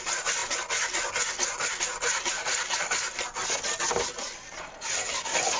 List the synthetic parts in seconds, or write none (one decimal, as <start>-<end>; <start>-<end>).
none